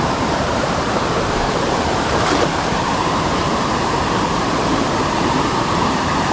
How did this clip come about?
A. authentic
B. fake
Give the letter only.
B